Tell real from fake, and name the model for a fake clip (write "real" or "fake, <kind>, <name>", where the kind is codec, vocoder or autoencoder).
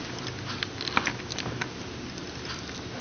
real